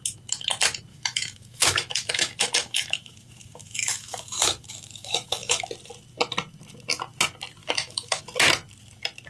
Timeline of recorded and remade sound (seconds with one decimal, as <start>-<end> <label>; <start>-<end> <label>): 0.0-0.9 recorded; 0.9-5.6 remade; 5.6-7.6 recorded; 7.6-8.2 remade; 8.2-9.3 recorded